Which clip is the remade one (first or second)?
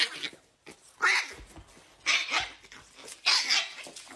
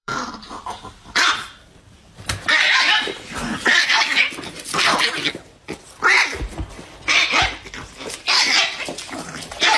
second